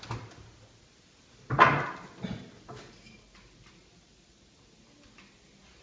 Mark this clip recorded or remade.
recorded